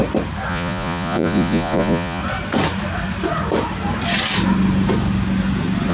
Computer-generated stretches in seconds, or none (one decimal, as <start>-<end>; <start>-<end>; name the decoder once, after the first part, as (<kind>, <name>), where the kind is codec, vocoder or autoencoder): 0.5-2.2 (vocoder, Vocos)